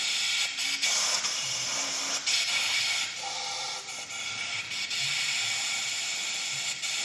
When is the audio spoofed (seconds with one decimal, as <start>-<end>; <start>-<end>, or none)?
none